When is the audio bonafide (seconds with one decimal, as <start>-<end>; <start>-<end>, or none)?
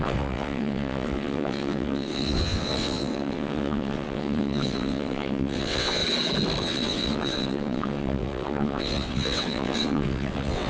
6.0-6.6